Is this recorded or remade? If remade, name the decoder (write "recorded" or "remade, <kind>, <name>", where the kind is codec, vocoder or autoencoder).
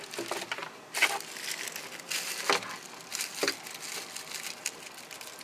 recorded